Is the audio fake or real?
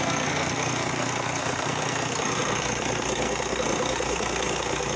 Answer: fake